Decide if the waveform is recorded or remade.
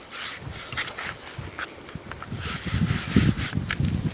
recorded